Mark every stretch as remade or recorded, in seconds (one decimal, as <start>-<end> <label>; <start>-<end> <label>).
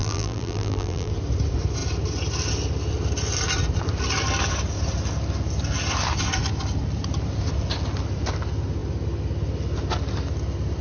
0.0-1.1 remade; 1.1-10.8 recorded